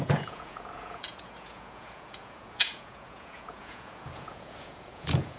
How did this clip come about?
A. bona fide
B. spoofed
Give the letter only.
B